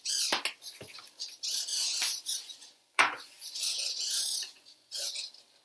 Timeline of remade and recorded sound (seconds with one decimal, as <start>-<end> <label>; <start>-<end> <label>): 0.0-1.7 recorded; 1.7-5.1 remade; 5.1-5.6 recorded